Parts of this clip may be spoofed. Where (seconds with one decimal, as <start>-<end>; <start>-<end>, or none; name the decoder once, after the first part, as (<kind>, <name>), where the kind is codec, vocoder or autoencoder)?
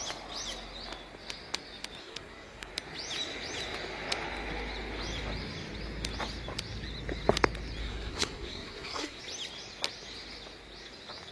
2.0-2.7 (codec, SNAC); 7.8-9.2